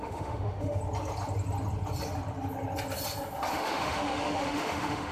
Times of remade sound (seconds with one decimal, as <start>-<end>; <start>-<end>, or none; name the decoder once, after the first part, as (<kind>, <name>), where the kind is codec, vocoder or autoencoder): 0.0-0.8 (autoencoder, DAC-VAE); 3.5-5.1